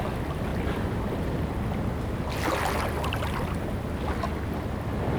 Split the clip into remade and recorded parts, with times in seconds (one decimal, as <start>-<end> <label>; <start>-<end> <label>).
0.0-5.2 recorded